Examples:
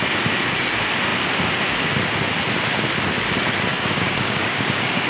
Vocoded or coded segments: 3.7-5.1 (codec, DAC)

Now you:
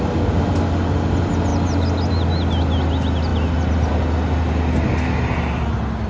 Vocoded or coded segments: none

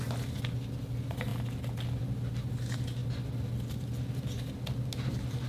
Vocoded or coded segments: none

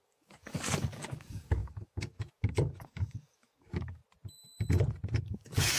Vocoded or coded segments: 0.0-4.0 (codec, DAC); 5.2-5.8

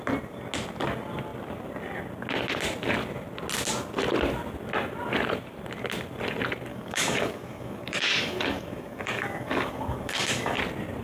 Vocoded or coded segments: 6.7-10.6 (codec, DAC)

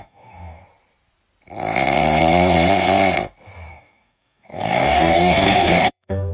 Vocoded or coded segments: 0.0-0.6 (codec, DAC); 3.7-6.3

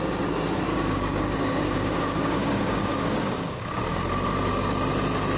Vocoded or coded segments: 0.7-3.8 (codec, DAC)